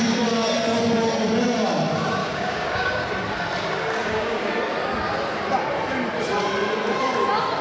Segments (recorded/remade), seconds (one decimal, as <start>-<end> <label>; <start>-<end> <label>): 0.0-2.2 recorded; 2.2-3.1 remade; 3.1-4.0 recorded; 4.0-4.5 remade; 4.5-7.6 recorded